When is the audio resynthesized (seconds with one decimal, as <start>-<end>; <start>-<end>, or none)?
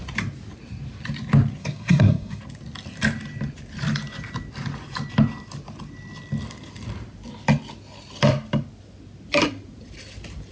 1.6-2.4